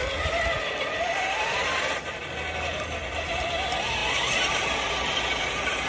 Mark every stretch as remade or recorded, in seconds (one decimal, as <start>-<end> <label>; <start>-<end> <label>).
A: 0.0-5.9 recorded